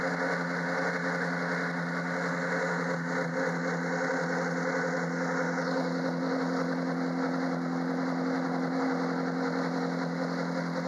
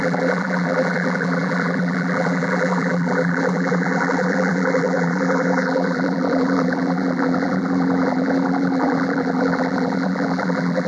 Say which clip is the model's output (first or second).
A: second